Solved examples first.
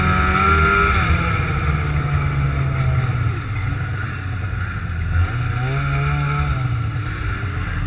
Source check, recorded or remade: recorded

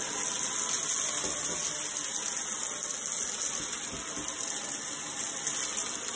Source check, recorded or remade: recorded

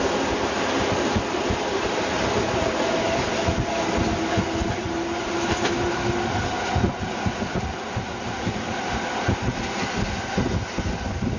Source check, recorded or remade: recorded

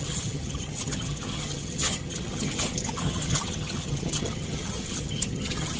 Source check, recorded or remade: remade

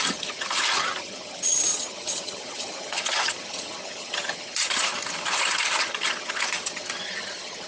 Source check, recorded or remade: remade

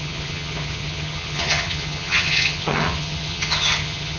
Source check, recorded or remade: remade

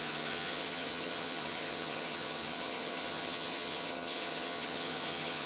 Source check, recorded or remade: remade